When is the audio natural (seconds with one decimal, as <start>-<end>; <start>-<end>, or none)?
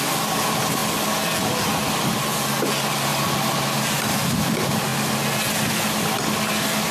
0.0-6.9